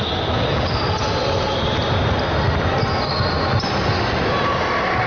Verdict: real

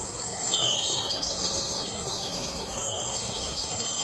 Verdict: fake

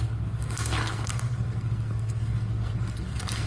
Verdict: fake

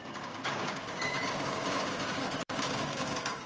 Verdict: fake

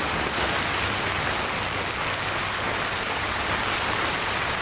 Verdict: real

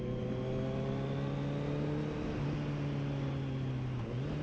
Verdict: real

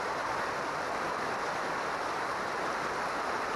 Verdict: fake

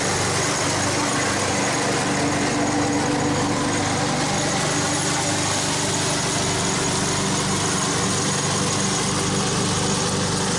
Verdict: real